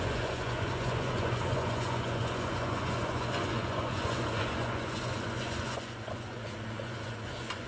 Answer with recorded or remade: remade